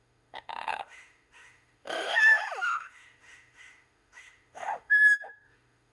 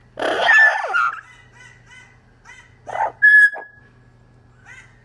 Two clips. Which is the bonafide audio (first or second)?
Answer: second